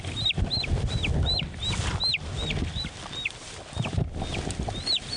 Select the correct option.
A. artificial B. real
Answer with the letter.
B